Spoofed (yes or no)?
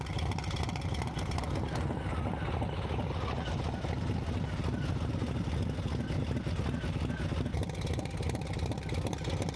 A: no